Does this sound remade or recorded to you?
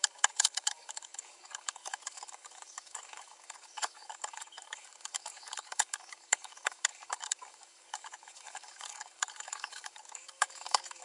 remade